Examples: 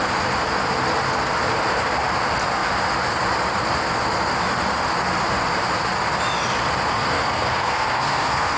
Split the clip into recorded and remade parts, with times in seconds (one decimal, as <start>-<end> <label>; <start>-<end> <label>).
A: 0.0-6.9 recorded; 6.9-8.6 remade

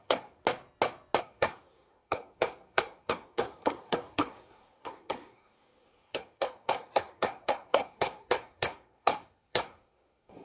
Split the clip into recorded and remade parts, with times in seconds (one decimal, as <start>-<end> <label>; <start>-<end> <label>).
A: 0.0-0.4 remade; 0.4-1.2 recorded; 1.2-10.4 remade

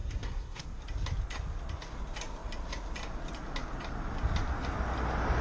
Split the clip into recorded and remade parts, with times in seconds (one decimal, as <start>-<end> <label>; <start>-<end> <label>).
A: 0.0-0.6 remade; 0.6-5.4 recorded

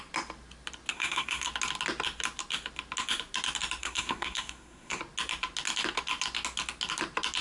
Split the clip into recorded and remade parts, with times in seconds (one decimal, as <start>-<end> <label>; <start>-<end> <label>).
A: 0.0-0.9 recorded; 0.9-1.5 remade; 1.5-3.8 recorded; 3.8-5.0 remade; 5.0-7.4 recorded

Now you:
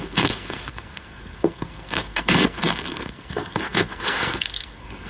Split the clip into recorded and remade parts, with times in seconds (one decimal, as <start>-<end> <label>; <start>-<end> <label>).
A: 0.0-5.1 remade

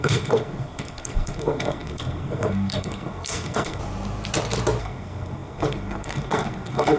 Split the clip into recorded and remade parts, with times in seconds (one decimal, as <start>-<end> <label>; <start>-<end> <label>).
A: 0.0-3.8 remade; 3.8-4.8 recorded; 4.8-7.0 remade

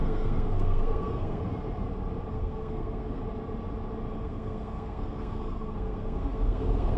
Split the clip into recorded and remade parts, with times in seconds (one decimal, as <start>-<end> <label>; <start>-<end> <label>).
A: 0.0-1.4 remade; 1.4-2.3 recorded; 2.3-3.2 remade; 3.2-4.2 recorded; 4.2-7.0 remade